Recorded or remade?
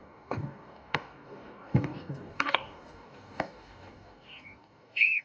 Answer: remade